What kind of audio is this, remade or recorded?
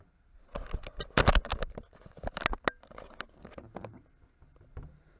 recorded